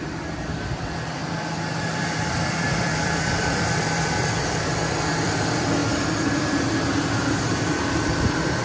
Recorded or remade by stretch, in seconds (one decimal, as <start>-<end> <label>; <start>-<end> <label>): 0.0-1.2 remade; 1.2-1.8 recorded; 1.8-5.8 remade; 5.8-7.5 recorded; 7.5-8.6 remade